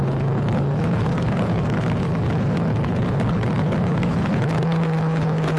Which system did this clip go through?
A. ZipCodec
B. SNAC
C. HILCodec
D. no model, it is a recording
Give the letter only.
C